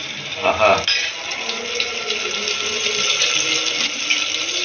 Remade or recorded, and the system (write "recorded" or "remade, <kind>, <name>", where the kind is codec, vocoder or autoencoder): recorded